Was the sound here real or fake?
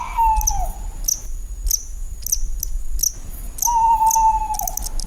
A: real